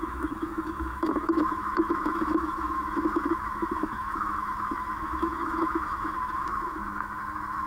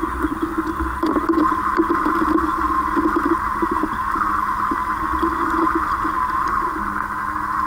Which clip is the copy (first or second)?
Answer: first